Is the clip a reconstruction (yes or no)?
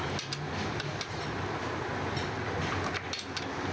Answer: no